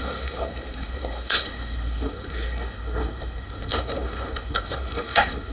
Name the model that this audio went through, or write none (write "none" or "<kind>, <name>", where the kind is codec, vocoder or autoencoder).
codec, SNAC